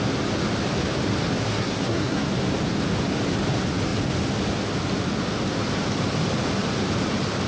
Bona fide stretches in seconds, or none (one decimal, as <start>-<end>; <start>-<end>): 0.0-1.4; 2.3-7.5